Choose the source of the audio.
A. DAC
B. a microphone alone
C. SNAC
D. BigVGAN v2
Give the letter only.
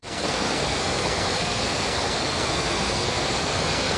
C